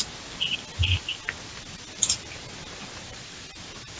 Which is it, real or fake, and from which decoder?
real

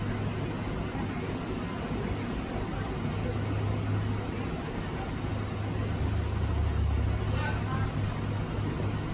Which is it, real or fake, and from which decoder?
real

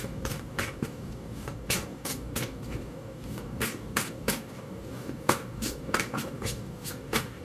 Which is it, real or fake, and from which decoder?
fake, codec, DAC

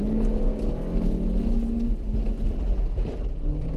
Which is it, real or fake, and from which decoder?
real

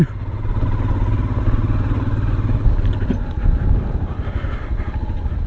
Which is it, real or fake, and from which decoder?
real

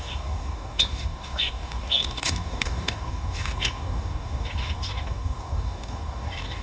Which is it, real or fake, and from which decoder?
fake, codec, DAC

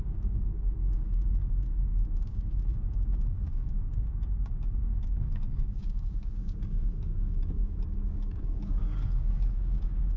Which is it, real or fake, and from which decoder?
fake, codec, DAC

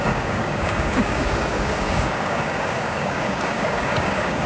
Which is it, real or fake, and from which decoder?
fake, codec, DAC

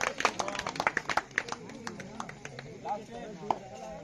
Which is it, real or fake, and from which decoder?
real